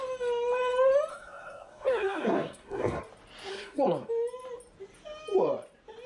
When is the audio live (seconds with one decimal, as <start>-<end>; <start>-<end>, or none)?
0.0-1.1; 3.0-3.5; 4.1-6.1